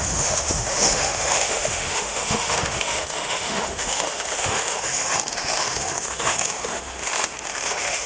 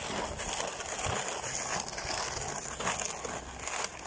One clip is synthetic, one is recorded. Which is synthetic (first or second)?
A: first